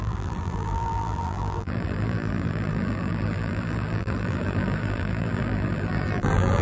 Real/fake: fake